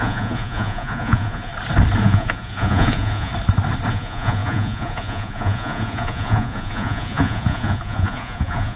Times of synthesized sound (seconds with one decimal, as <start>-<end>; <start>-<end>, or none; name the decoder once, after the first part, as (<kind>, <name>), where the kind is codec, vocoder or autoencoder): 0.0-1.5 (vocoder, Vocos); 2.0-3.3; 3.9-8.8